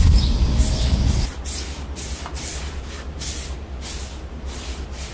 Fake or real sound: real